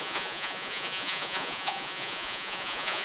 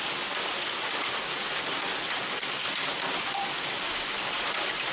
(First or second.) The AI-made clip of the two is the first